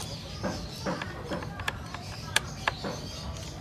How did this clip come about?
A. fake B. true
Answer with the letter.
A